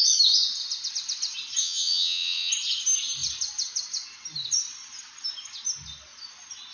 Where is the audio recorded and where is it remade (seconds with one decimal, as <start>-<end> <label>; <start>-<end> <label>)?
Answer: 0.0-1.6 recorded; 1.6-2.5 remade; 2.5-6.7 recorded